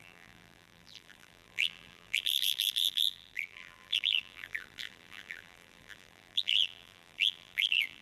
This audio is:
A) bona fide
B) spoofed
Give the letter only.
B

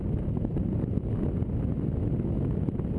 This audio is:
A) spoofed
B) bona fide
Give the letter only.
B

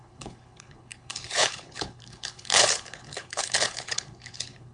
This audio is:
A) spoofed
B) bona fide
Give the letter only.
A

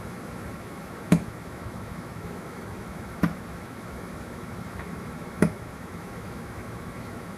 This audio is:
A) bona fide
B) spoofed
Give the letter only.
B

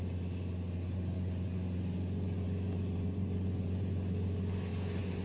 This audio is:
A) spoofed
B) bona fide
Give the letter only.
B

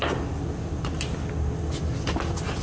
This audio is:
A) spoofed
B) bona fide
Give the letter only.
B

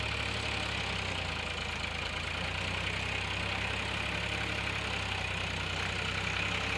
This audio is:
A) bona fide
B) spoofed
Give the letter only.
A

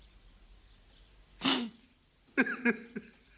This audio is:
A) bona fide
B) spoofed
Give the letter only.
A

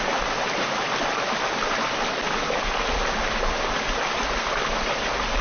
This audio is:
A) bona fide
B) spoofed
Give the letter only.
A